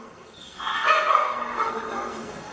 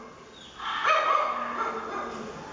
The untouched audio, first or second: second